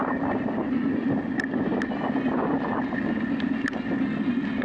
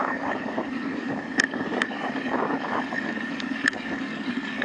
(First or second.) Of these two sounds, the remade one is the second